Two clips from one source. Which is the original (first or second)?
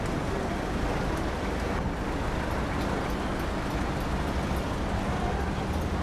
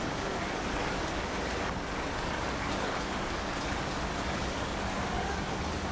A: first